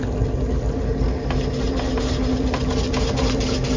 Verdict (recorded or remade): recorded